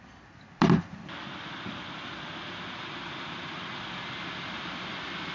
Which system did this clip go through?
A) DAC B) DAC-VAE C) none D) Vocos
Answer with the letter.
C